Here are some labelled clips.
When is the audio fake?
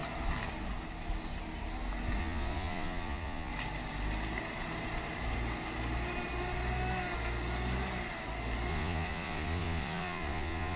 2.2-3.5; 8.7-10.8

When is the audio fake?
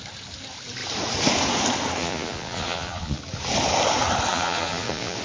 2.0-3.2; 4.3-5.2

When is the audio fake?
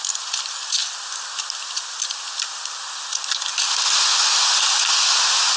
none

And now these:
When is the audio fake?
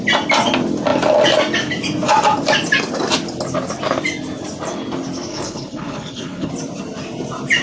5.3-6.5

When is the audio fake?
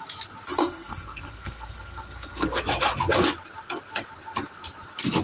0.6-2.6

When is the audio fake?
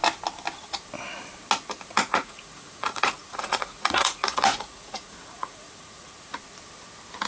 1.9-6.3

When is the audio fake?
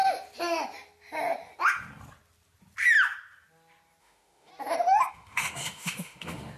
4.0-4.5; 5.1-6.6